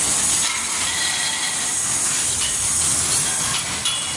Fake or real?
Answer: real